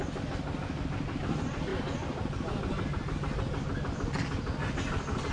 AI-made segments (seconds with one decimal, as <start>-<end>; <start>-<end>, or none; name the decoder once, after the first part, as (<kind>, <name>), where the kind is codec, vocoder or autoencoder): none